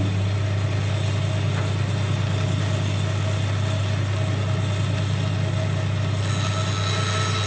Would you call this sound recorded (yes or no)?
yes